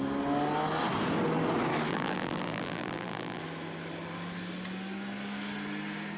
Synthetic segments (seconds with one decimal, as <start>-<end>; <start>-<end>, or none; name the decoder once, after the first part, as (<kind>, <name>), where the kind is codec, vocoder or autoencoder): 1.9-3.4 (vocoder, BigVGAN v2)